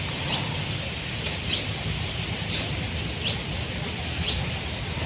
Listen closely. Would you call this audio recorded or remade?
recorded